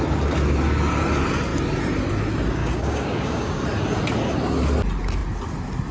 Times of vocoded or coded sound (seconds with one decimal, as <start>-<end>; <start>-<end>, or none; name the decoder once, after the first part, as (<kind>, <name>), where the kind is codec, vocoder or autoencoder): 2.6-3.6 (codec, DAC)